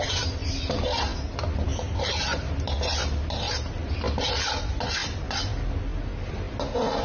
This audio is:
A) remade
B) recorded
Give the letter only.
B